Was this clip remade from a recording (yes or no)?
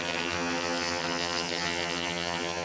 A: yes